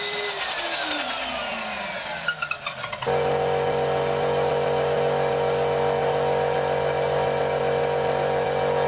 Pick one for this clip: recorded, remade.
recorded